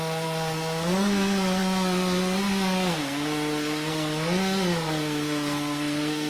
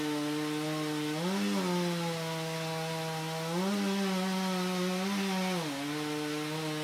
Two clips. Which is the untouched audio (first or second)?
second